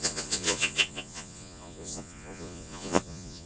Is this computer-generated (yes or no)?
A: yes